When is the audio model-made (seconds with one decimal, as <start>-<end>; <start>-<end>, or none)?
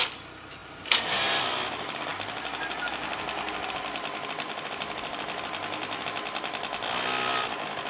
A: 0.6-1.4